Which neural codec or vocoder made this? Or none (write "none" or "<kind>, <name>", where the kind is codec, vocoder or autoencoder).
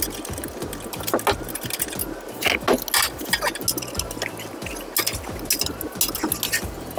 none